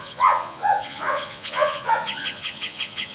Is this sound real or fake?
fake